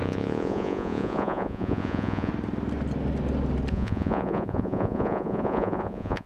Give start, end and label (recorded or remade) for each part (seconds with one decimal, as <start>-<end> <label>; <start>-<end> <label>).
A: 0.0-2.3 remade; 2.3-3.7 recorded; 3.7-6.3 remade